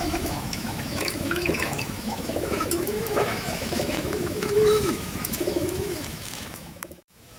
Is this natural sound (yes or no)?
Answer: no